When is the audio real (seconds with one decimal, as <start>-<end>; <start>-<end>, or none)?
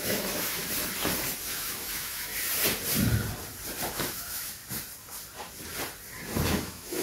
0.6-1.5; 2.3-3.9; 4.6-6.6